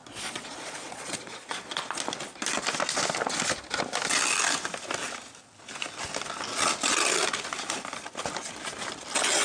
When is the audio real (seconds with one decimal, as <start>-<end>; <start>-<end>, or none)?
2.0-9.4